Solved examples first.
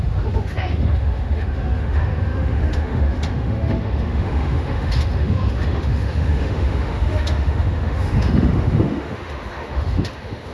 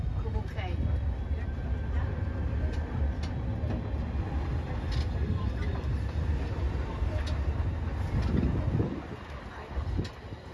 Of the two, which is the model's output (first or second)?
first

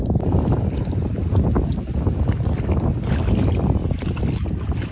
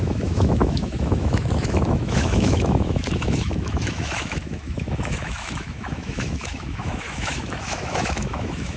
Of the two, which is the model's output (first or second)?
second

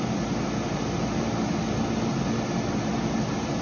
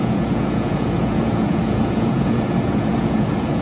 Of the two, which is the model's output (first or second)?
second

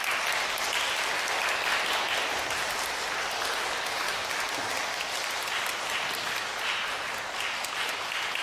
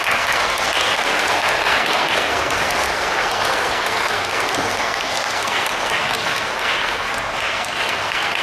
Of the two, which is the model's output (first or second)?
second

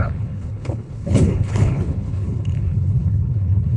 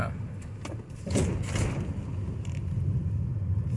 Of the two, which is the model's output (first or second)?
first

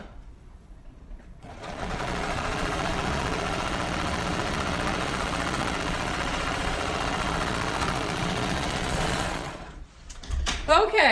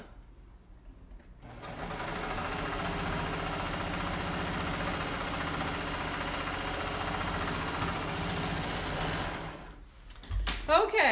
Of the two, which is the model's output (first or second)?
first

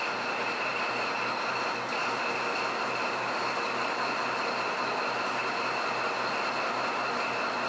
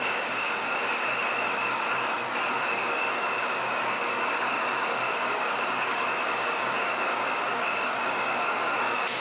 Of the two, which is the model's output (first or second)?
second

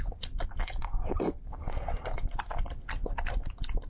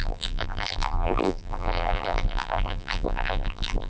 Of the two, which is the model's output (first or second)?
second